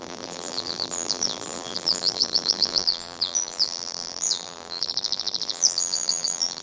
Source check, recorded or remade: remade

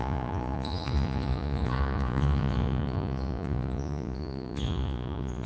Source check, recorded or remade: remade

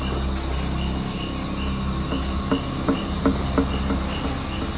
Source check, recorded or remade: recorded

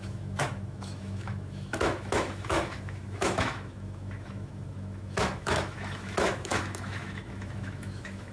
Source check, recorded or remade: remade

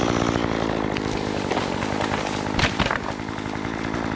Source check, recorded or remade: recorded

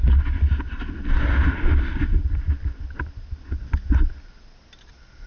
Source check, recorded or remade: recorded